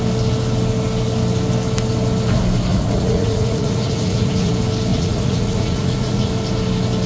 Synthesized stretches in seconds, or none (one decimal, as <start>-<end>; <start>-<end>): 2.7-4.5; 4.9-6.3